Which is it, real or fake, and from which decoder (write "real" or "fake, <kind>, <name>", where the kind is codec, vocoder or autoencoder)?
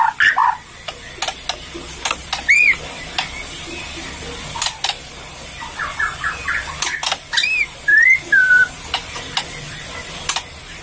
real